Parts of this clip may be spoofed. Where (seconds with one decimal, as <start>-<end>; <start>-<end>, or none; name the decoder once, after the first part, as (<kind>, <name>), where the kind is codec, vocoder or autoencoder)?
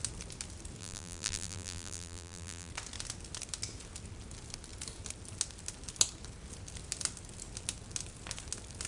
0.8-2.7 (vocoder, BigVGAN v2)